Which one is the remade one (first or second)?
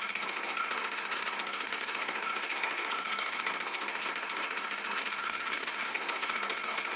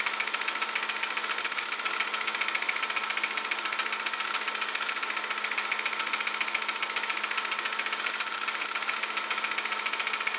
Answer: first